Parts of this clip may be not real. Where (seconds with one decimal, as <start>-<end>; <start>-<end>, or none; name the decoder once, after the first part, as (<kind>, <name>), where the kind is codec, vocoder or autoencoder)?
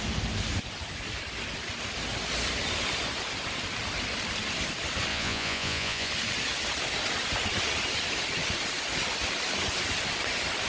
5.1-6.1 (vocoder, Vocos)